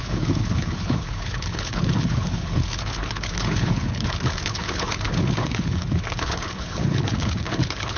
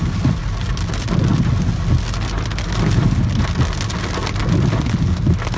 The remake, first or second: first